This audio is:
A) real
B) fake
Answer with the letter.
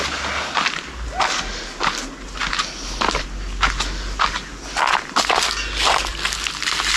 A